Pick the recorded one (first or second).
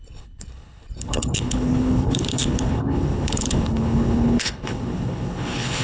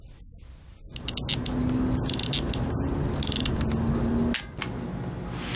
second